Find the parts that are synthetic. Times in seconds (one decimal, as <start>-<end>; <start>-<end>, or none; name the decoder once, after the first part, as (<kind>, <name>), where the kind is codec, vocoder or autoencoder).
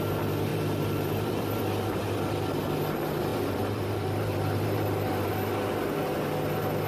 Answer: 0.5-1.6 (vocoder, BigVGAN v2); 3.3-5.3